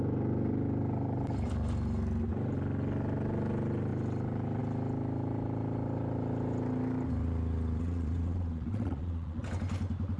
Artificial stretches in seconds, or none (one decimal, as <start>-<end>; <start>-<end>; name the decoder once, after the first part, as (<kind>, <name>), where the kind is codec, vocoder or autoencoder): 7.8-9.4 (vocoder, Vocos)